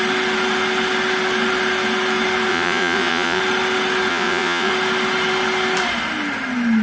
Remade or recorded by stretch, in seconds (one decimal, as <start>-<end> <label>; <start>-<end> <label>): 0.0-2.5 recorded; 2.5-3.4 remade; 3.4-4.1 recorded; 4.1-4.7 remade; 4.7-6.8 recorded